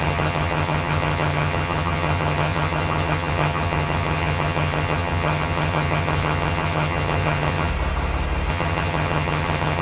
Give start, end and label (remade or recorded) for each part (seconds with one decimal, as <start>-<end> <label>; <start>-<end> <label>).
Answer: 0.0-7.7 remade; 7.7-8.5 recorded; 8.5-9.8 remade